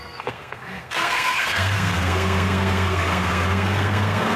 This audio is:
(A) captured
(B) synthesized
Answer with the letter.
B